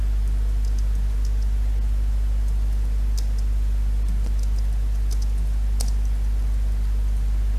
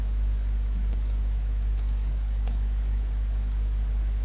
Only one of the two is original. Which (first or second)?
first